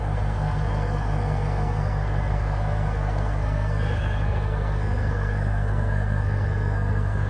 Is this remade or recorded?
remade